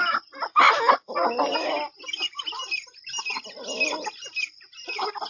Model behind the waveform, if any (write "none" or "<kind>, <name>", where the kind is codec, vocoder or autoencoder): none